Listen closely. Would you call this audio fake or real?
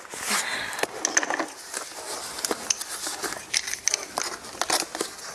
real